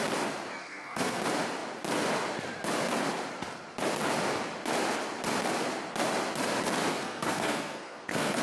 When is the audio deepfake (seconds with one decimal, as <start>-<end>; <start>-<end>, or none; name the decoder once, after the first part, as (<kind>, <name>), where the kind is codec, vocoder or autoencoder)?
0.6-1.2 (codec, SNAC); 6.9-8.4